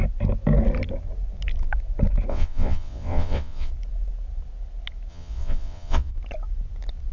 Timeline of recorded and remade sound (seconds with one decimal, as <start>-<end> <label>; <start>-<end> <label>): 0.0-2.3 recorded; 2.3-3.7 remade; 3.7-5.1 recorded; 5.1-6.1 remade; 6.1-7.1 recorded